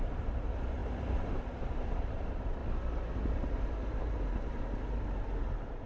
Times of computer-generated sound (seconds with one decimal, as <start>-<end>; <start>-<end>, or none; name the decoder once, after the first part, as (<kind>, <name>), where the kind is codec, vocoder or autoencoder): 0.0-2.6 (vocoder, BigVGAN v2); 3.3-5.9